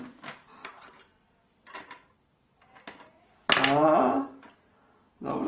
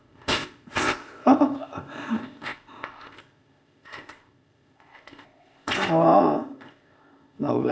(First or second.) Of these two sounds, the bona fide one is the first